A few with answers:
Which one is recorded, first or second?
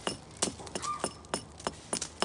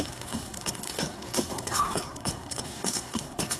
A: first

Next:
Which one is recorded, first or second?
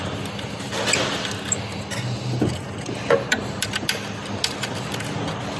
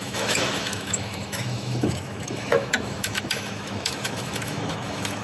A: first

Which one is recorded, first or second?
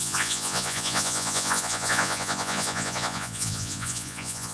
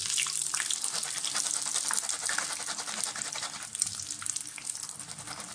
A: second